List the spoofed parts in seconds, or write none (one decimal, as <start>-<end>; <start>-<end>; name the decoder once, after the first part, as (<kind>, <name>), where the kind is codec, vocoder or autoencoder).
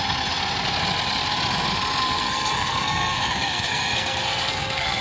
2.0-5.0 (codec, SNAC)